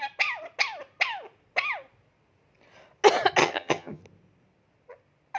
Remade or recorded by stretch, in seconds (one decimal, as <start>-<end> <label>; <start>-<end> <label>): 0.0-3.4 recorded; 3.4-4.0 remade; 4.0-5.4 recorded